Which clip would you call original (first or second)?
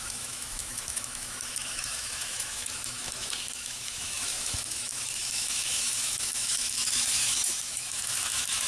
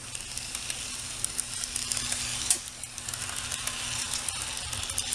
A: second